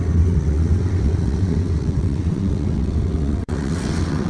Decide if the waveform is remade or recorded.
remade